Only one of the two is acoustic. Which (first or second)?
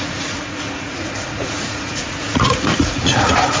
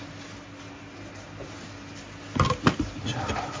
second